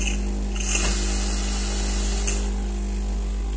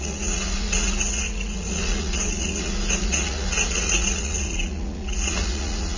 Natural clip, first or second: first